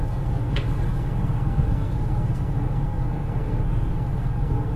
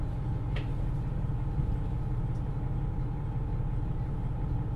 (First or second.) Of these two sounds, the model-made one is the first